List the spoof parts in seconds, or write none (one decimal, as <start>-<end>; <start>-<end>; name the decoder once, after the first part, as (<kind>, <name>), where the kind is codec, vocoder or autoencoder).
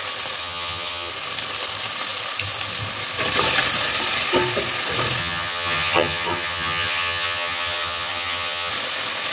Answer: 0.4-1.1 (vocoder, HiFi-GAN); 5.2-8.7